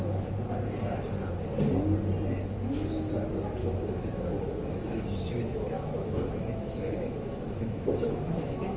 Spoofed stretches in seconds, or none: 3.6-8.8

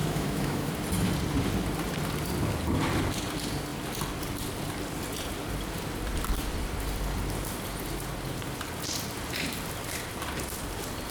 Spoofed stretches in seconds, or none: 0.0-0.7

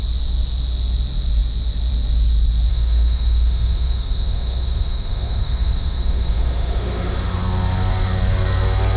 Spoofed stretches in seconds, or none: 2.7-7.4